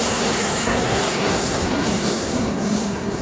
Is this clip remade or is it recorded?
remade